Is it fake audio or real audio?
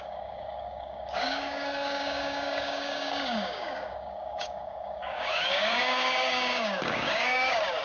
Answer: fake